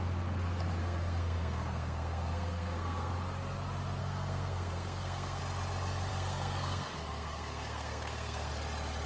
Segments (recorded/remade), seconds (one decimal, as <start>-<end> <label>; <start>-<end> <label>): 0.0-0.8 recorded; 0.8-3.1 remade; 3.1-4.0 recorded; 4.0-5.4 remade; 5.4-6.1 recorded; 6.1-8.5 remade; 8.5-9.1 recorded